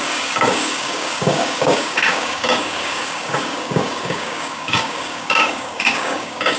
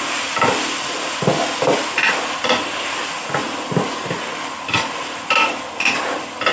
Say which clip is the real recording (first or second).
second